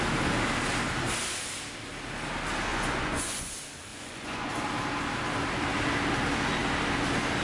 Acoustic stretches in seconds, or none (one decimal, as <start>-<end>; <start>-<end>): 0.0-2.7; 3.5-3.9; 4.5-7.4